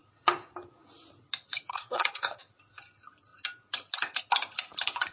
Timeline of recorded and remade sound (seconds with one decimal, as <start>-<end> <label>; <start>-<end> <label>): 0.0-1.7 recorded; 1.7-2.4 remade; 2.4-5.1 recorded